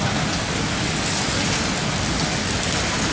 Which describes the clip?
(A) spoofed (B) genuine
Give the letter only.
B